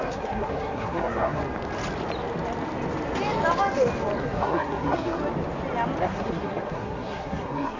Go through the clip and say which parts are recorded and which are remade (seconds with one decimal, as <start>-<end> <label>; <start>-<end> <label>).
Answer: 0.0-1.4 remade; 1.4-4.2 recorded; 4.2-5.2 remade; 5.2-6.0 recorded; 6.0-7.8 remade